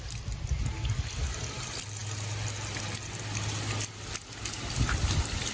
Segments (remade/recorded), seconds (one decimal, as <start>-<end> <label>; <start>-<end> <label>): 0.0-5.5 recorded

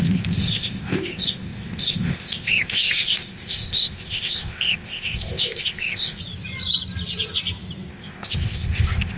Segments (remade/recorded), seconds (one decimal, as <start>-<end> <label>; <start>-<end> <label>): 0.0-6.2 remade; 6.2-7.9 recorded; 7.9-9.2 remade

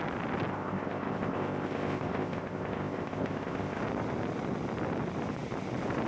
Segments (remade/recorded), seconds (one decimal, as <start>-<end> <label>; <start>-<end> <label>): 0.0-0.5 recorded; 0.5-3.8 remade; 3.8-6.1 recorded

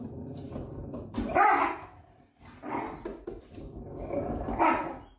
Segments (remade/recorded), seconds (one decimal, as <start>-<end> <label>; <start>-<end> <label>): 0.0-5.2 recorded

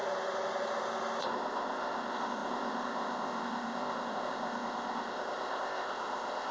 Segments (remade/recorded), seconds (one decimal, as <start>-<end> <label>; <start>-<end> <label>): 0.0-1.2 recorded; 1.2-6.5 remade

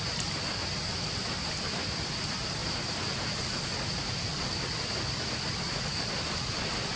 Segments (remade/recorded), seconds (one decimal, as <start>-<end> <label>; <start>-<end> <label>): 0.0-7.0 recorded